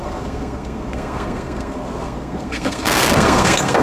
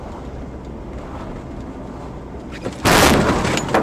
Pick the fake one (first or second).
first